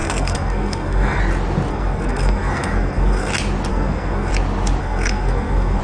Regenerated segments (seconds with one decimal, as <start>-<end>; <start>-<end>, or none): 0.0-1.2; 1.7-3.3; 3.7-4.3; 4.8-5.8